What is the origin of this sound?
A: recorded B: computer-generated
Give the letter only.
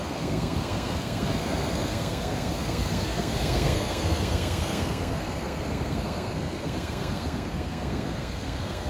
B